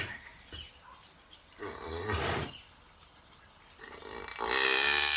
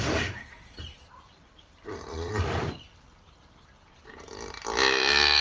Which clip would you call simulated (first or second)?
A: second